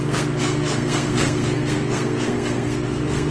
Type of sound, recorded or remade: remade